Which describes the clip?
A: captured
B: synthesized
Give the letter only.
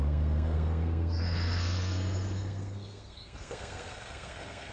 B